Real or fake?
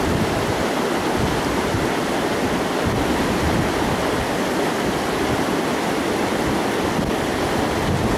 real